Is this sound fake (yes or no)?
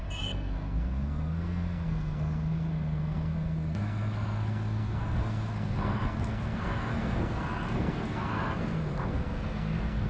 yes